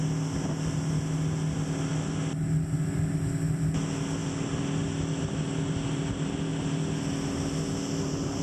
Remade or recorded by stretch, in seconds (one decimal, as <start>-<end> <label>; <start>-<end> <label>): 0.0-8.4 recorded

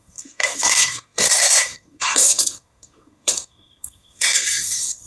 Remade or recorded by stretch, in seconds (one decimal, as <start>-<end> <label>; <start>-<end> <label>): 0.0-5.1 remade

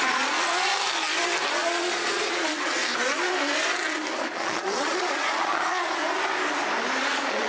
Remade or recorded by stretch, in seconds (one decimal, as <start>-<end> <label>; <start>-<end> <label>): 0.0-0.7 remade; 0.7-1.5 recorded; 1.5-2.8 remade; 2.8-4.2 recorded; 4.2-6.0 remade; 6.0-7.0 recorded; 7.0-7.5 remade

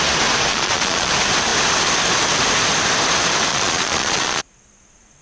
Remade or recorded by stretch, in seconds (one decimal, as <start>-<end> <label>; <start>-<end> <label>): 0.0-0.5 recorded; 0.5-1.1 remade; 1.1-3.5 recorded; 3.5-4.4 remade; 4.4-5.2 recorded

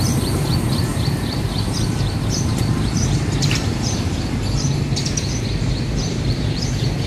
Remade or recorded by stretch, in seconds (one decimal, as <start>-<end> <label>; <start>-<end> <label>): 0.0-7.1 remade

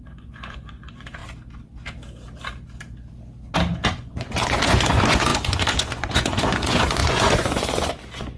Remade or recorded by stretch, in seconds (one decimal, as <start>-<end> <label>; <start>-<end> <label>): 0.0-1.2 remade; 1.2-3.9 recorded; 3.9-8.4 remade

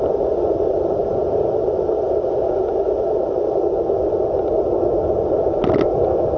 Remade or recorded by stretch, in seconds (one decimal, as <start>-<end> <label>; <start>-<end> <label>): 0.0-6.4 recorded

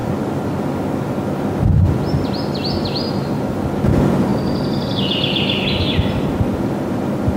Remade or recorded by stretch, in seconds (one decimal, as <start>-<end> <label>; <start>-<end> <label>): 0.0-7.4 recorded